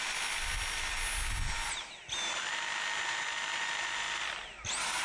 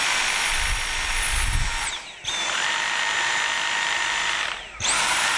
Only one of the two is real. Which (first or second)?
first